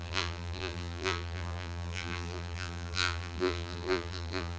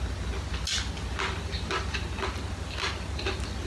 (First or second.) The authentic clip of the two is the second